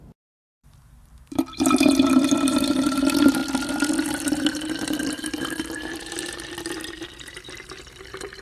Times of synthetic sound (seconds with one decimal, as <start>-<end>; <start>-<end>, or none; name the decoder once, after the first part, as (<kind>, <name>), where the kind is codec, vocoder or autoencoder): 0.0-3.4 (vocoder, BigVGAN v2); 4.0-8.4